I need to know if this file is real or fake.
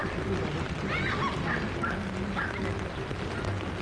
real